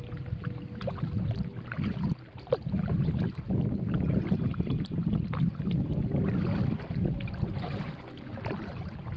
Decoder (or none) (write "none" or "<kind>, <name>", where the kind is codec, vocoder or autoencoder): none